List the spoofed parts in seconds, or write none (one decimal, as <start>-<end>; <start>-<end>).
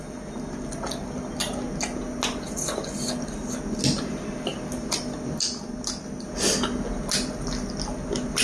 none